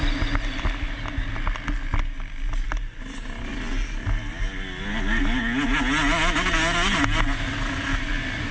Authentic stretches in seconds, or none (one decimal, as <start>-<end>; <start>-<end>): 0.0-8.5